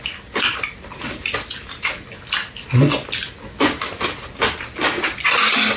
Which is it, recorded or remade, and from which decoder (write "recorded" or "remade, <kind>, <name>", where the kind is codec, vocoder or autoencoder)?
recorded